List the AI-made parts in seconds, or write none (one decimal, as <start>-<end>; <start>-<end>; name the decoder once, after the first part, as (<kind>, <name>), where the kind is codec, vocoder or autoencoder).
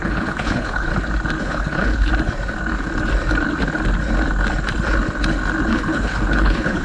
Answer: 0.0-0.9 (codec, HILCodec); 1.4-2.1; 5.7-6.8